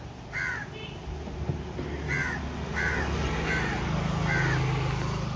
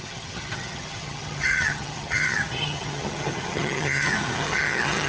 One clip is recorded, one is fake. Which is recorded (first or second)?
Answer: first